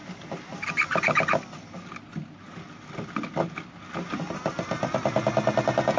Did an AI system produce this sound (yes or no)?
no